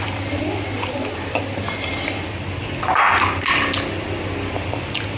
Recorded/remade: recorded